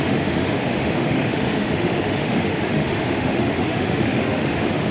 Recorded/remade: remade